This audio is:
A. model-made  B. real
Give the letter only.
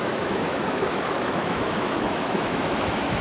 A